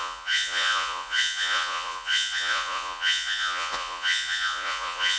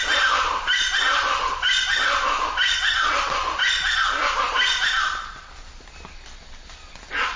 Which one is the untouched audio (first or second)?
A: second